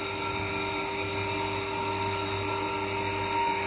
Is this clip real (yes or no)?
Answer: yes